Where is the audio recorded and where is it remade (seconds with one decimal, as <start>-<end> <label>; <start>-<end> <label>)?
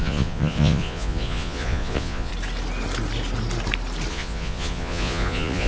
0.0-2.3 remade; 2.3-4.1 recorded; 4.1-5.7 remade